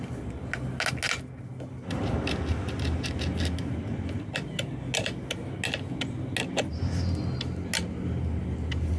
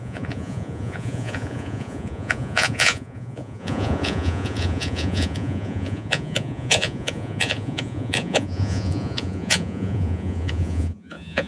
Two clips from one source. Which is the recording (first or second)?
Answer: first